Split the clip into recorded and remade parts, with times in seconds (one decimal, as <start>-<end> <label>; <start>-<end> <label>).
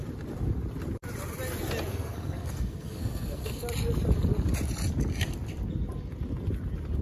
0.0-1.9 recorded; 1.9-3.6 remade; 3.6-7.0 recorded